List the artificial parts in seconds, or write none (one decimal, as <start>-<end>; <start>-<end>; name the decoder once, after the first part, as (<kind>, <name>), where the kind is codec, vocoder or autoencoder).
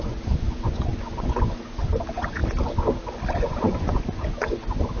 0.0-2.4 (vocoder, Vocos); 3.3-5.0